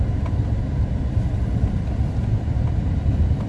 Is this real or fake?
fake